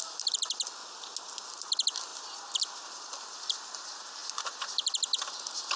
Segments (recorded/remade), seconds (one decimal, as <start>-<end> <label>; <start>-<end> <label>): 0.0-0.8 remade; 0.8-1.5 recorded; 1.5-2.1 remade; 2.1-2.9 recorded; 2.9-5.8 remade